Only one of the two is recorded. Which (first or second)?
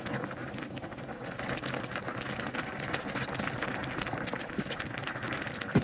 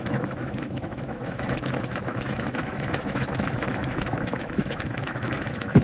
first